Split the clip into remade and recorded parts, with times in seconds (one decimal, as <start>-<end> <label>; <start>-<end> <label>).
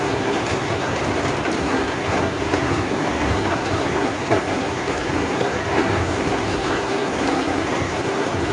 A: 0.0-1.0 remade; 1.0-1.6 recorded; 1.6-8.5 remade